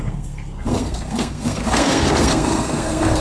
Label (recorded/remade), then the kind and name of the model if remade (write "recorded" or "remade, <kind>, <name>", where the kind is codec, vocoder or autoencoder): remade, codec, SNAC